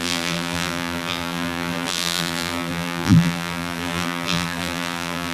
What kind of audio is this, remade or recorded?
remade